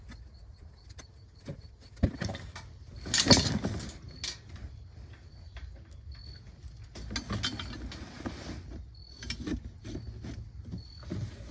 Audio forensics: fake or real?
real